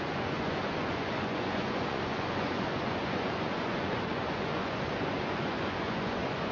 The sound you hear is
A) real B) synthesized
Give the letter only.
B